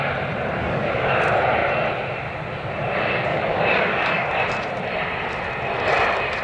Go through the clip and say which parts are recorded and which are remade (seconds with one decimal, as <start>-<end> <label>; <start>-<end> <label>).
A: 0.0-0.6 recorded; 0.6-1.2 remade; 1.2-3.3 recorded; 3.3-4.4 remade; 4.4-6.4 recorded